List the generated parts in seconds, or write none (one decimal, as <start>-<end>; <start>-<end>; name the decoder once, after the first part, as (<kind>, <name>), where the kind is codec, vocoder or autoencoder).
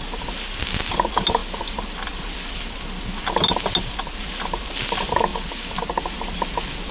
1.4-3.0 (vocoder, BigVGAN v2); 5.3-6.3